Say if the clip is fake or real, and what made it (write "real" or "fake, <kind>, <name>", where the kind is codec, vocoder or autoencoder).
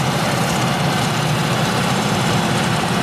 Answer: fake, vocoder, BigVGAN v2